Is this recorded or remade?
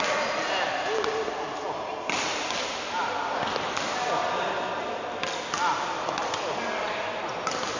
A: recorded